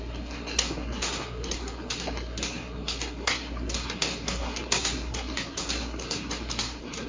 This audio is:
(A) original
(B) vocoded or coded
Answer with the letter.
B